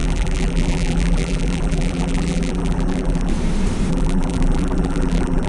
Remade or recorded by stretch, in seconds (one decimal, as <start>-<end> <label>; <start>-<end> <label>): 0.0-3.3 remade; 3.3-3.9 recorded; 3.9-5.5 remade